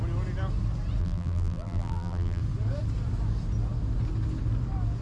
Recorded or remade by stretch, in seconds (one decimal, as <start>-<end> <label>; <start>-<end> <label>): 0.0-1.0 recorded; 1.0-2.4 remade; 2.4-5.0 recorded